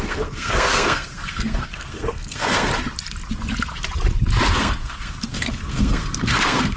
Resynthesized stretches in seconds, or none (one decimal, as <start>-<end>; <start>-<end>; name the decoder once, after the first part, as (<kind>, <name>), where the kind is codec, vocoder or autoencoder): 0.0-2.7 (codec, SNAC); 4.5-6.8